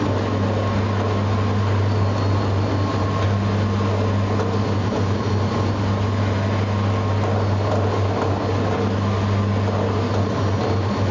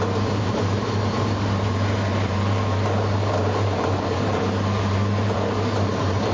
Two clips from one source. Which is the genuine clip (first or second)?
first